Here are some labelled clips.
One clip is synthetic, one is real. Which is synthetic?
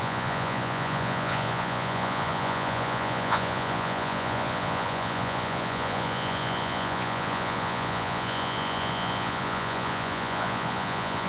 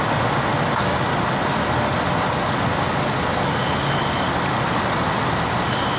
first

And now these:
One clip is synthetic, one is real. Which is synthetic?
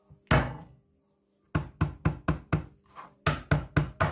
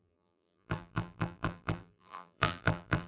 second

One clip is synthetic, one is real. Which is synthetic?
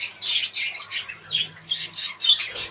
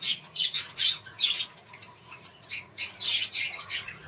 second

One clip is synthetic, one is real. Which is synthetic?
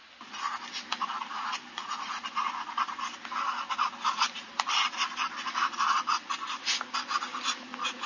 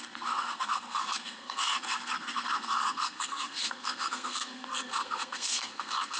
second